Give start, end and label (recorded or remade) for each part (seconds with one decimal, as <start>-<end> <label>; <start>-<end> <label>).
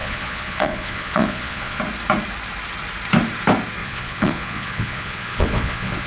0.0-1.8 remade; 1.8-3.8 recorded; 3.8-6.1 remade